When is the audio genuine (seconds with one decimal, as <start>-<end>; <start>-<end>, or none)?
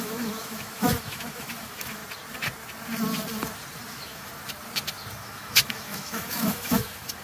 2.0-3.9; 4.3-5.2